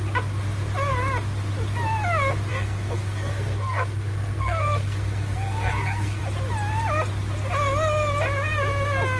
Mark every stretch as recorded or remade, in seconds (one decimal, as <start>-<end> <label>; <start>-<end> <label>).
0.0-2.5 recorded; 2.5-6.2 remade; 6.2-9.2 recorded